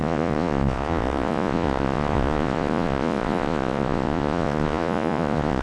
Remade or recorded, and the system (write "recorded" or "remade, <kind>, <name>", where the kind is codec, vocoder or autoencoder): remade, vocoder, Vocos